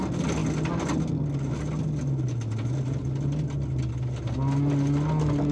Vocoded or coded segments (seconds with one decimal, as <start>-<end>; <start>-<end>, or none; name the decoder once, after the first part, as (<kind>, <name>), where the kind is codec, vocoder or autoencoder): none